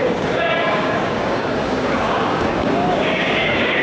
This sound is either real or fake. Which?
fake